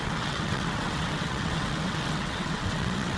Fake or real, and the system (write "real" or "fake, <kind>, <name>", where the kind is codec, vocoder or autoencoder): fake, vocoder, WaveNeXt